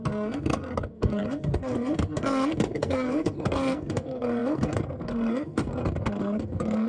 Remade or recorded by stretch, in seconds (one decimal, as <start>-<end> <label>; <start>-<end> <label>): 0.0-6.9 remade